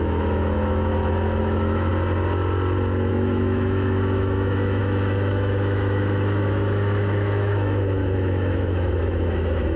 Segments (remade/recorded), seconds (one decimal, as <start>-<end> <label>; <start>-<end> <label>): 0.0-0.9 remade; 0.9-1.4 recorded; 1.4-1.9 remade; 1.9-3.1 recorded; 3.1-9.8 remade